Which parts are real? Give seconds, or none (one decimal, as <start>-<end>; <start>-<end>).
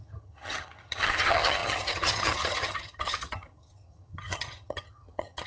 none